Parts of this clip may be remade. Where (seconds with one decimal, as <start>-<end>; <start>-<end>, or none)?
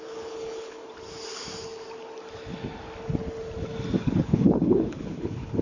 0.0-0.8; 4.0-5.6